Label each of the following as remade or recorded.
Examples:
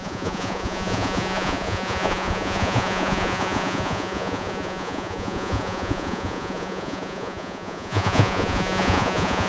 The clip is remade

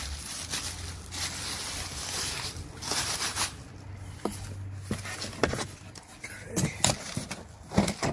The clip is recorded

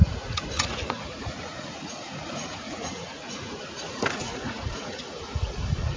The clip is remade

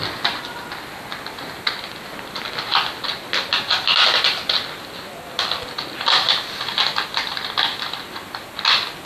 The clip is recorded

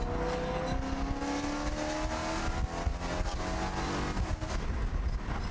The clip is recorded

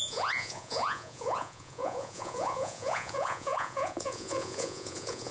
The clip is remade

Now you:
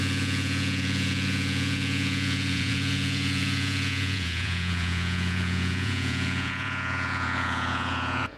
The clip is remade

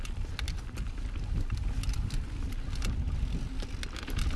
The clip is recorded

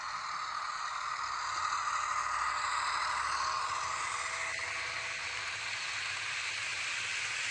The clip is recorded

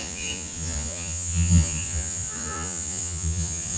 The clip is remade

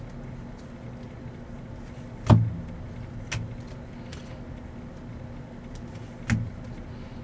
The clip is recorded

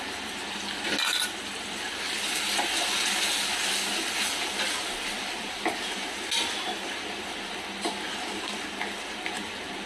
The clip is recorded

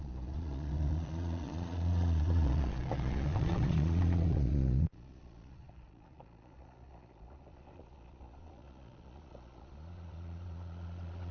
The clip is remade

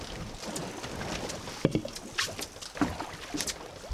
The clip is recorded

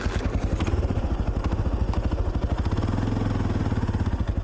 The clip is recorded